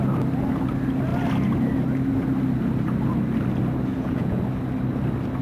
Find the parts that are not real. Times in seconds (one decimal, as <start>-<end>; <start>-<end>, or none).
3.9-4.4